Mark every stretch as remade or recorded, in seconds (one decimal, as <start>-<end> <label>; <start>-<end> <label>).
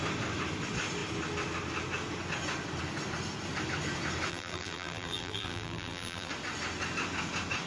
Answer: 0.0-4.3 recorded; 4.3-6.3 remade; 6.3-7.7 recorded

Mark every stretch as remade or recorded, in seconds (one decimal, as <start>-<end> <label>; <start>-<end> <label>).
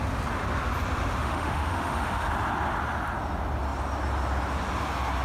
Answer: 0.0-1.2 recorded; 1.2-2.3 remade; 2.3-5.2 recorded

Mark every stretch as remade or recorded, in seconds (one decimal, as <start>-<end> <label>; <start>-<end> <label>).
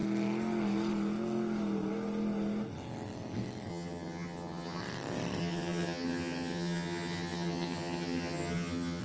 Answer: 0.0-3.7 recorded; 3.7-4.8 remade; 4.8-5.4 recorded; 5.4-9.0 remade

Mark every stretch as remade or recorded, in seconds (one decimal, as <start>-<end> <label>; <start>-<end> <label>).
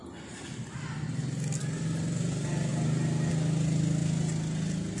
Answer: 0.0-5.0 recorded